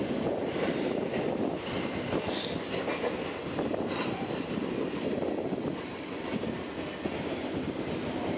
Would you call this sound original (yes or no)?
yes